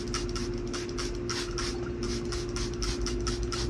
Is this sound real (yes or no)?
yes